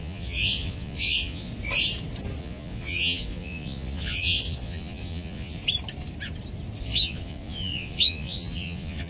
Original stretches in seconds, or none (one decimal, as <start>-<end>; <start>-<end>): 1.5-2.4; 5.6-6.8